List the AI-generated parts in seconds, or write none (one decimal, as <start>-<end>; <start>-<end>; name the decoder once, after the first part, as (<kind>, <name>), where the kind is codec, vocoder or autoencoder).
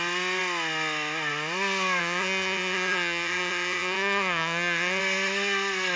2.0-5.0 (vocoder, HiFi-GAN)